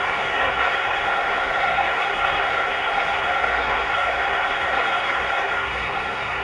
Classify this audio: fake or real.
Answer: fake